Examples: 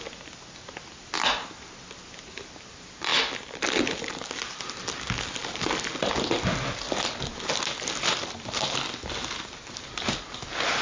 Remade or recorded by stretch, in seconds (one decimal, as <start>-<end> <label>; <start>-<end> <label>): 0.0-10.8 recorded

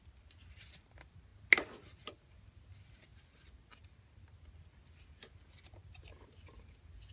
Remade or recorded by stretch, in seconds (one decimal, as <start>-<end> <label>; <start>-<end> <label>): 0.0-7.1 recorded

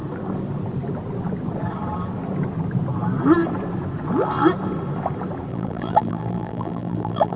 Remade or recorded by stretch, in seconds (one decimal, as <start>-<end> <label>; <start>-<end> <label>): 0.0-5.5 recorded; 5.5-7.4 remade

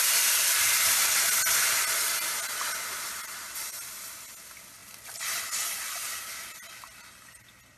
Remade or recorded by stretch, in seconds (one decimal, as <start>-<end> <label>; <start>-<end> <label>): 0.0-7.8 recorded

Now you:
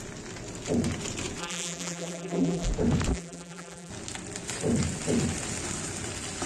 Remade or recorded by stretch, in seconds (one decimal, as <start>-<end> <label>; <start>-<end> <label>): 0.0-1.4 recorded; 1.4-2.7 remade; 2.7-3.1 recorded; 3.1-3.9 remade; 3.9-6.5 recorded

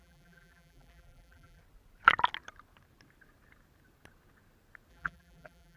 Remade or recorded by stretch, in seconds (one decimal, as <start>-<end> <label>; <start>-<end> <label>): 0.0-1.6 remade; 1.6-4.9 recorded; 4.9-5.8 remade

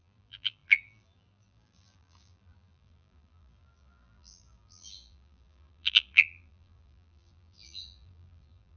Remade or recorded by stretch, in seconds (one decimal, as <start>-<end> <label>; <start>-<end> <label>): 0.0-8.8 remade